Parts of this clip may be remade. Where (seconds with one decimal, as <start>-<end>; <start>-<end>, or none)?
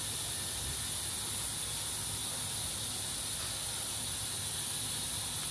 none